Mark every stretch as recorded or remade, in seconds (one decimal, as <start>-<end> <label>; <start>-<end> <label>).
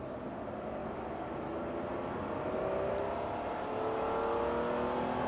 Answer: 0.0-5.3 recorded